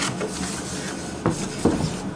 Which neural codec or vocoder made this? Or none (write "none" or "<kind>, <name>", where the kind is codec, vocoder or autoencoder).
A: none